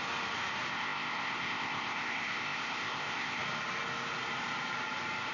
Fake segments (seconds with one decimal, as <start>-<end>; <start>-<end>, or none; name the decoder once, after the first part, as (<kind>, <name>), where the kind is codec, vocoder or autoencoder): 0.7-3.4 (codec, ZipCodec)